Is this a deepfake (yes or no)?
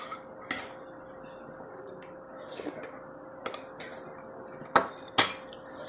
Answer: no